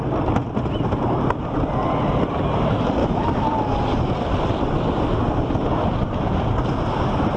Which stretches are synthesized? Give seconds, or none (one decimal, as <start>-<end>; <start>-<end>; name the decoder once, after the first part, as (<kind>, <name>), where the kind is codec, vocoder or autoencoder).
3.0-3.5 (autoencoder, DAC-VAE)